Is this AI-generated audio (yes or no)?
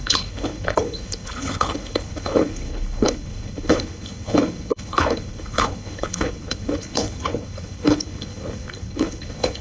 yes